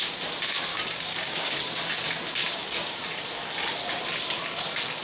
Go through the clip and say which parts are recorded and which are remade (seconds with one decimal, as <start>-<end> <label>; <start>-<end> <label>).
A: 0.0-0.7 recorded; 0.7-1.5 remade; 1.5-2.4 recorded; 2.4-3.0 remade; 3.0-5.0 recorded